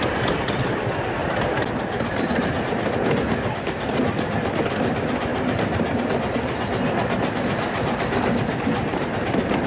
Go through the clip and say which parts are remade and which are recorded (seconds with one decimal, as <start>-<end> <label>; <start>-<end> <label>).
0.0-5.3 recorded; 5.3-6.0 remade; 6.0-9.7 recorded